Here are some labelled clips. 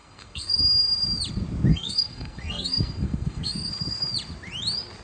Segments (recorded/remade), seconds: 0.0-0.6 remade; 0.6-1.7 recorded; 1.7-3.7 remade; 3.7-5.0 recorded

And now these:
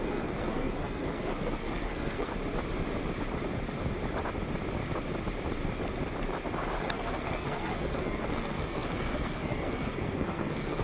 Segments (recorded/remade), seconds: 0.0-2.3 remade; 2.3-6.8 recorded; 6.8-10.8 remade